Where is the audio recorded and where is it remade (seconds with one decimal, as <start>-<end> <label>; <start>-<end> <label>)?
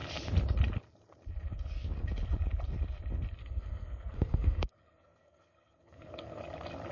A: 0.0-3.4 recorded; 3.4-6.4 remade; 6.4-6.9 recorded